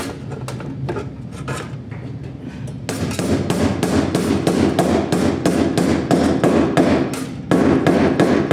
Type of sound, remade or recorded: recorded